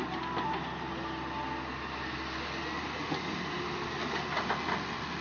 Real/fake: real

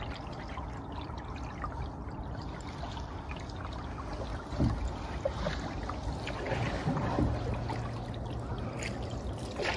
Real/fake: real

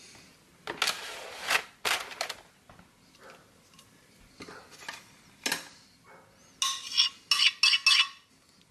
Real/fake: real